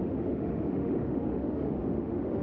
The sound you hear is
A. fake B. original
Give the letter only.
A